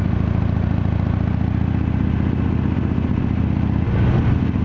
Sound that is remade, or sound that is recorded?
recorded